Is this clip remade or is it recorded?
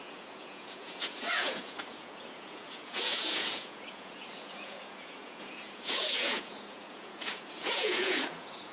remade